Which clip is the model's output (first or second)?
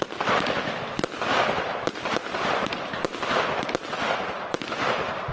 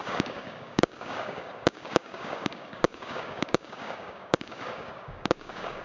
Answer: second